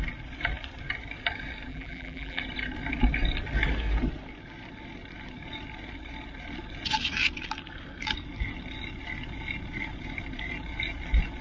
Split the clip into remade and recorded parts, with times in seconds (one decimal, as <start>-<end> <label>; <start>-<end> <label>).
0.0-1.7 recorded; 1.7-2.4 remade; 2.4-11.4 recorded